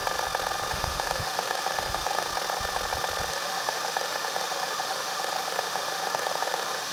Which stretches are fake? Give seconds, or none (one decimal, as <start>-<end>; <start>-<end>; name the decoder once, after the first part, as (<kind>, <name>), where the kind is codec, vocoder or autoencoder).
0.7-2.3 (autoencoder, DAC-VAE); 3.3-6.9